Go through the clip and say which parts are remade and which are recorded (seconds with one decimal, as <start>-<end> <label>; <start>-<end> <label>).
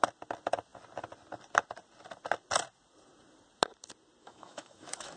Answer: 0.0-4.2 recorded; 4.2-5.2 remade